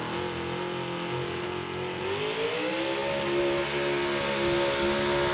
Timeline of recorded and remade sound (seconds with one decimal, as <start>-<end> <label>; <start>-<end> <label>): 0.0-5.3 recorded

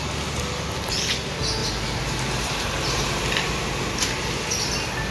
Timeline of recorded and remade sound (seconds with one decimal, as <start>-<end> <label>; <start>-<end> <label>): 0.0-1.6 recorded; 1.6-3.8 remade; 3.8-5.1 recorded

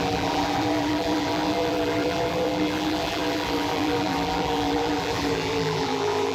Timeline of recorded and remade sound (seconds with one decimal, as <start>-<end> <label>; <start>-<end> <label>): 0.0-6.3 remade

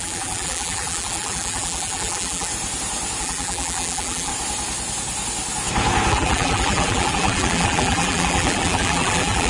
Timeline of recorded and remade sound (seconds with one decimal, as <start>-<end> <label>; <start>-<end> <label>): 0.0-2.5 remade; 2.5-3.2 recorded; 3.2-4.3 remade; 4.3-6.1 recorded; 6.1-9.5 remade

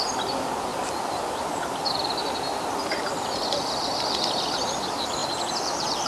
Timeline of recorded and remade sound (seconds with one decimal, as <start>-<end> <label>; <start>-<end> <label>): 0.0-6.1 remade